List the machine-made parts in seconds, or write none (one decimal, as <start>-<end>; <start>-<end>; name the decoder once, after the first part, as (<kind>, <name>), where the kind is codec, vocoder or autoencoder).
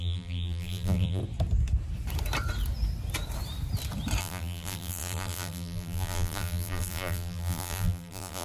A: 0.0-1.2 (vocoder, BigVGAN v2); 4.2-8.4